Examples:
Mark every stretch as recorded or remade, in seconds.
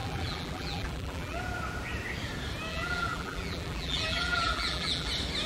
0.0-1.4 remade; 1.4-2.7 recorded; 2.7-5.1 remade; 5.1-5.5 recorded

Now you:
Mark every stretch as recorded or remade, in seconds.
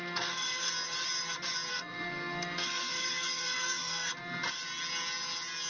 0.0-0.7 remade; 0.7-1.7 recorded; 1.7-4.1 remade; 4.1-5.7 recorded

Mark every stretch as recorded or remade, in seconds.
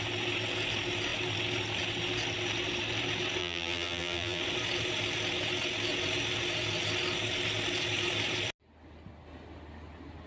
0.0-3.4 recorded; 3.4-4.4 remade; 4.4-10.3 recorded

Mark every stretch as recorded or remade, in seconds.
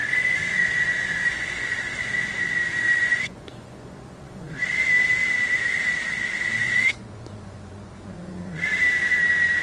0.0-4.8 remade; 4.8-6.6 recorded; 6.6-8.7 remade; 8.7-9.6 recorded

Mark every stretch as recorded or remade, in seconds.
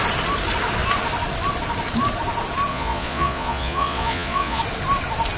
0.0-2.7 recorded; 2.7-4.6 remade; 4.6-5.4 recorded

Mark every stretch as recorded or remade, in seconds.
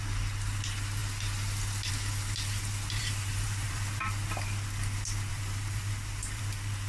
0.0-3.0 recorded; 3.0-4.0 remade; 4.0-5.3 recorded; 5.3-6.4 remade; 6.4-6.9 recorded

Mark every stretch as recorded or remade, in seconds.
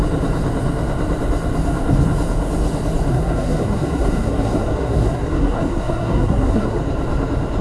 0.0-3.1 recorded; 3.1-6.8 remade; 6.8-7.6 recorded